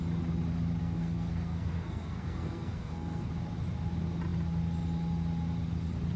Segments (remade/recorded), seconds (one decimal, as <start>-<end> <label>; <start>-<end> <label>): 0.0-0.8 recorded; 0.8-3.3 remade; 3.3-6.2 recorded